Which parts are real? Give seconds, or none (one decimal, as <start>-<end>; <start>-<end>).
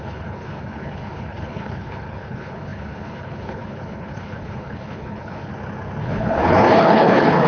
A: 5.5-6.0